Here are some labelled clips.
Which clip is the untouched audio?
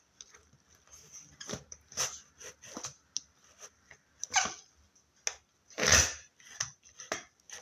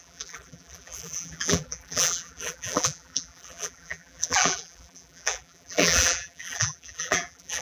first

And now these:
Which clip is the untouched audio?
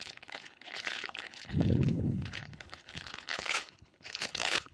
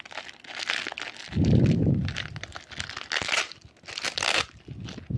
second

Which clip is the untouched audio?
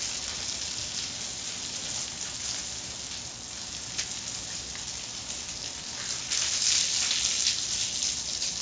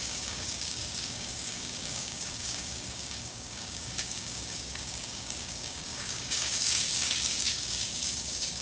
first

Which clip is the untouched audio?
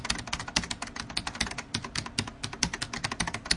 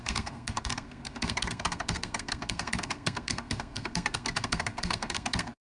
first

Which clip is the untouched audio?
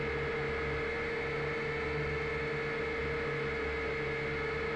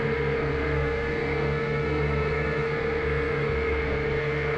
first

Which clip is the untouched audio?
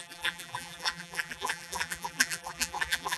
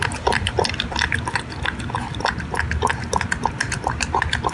second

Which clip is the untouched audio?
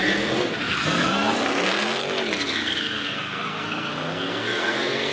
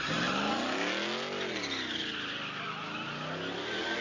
second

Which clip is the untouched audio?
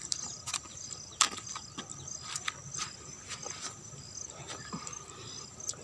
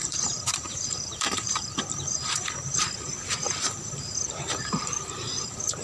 first